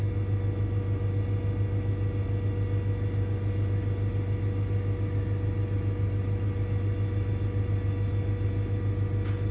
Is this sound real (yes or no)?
yes